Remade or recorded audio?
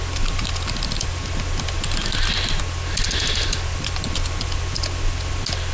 recorded